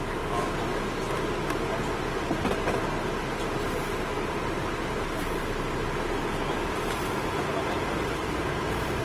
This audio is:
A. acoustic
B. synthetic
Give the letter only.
A